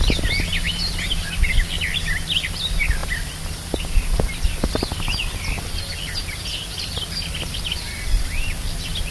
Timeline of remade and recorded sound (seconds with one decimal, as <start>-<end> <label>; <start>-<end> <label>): 0.0-9.1 recorded